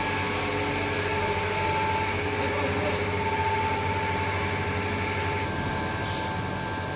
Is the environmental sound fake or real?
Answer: real